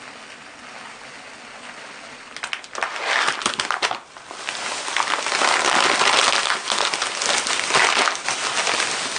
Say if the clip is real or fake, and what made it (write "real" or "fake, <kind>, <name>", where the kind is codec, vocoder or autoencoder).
real